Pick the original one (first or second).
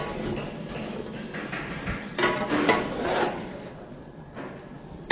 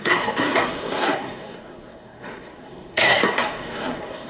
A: first